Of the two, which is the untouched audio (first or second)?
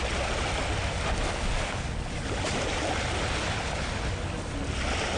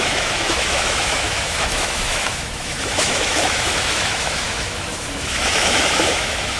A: first